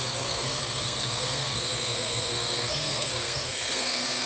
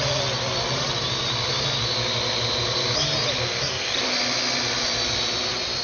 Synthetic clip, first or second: first